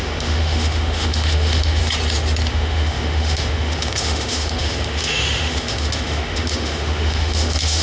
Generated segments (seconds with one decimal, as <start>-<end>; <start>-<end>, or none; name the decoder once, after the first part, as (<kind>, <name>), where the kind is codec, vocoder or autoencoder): 0.0-1.8 (autoencoder, DAC-VAE); 2.5-7.8